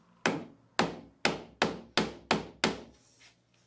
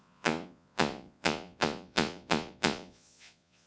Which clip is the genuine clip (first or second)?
first